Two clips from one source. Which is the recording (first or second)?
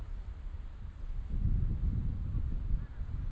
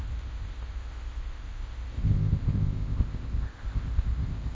first